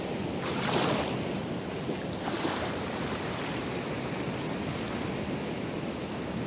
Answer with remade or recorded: recorded